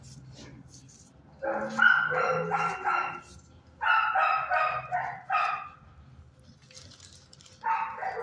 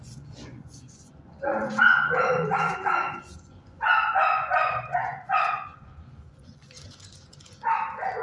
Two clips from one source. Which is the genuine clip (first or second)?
first